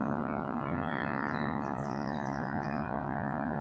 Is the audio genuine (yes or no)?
no